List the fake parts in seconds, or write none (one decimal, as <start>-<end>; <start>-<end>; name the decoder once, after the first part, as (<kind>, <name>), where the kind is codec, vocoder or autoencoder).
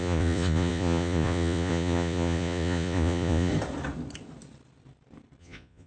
0.0-3.5 (vocoder, Vocos); 5.4-5.9